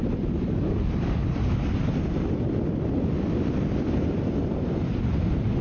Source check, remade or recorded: recorded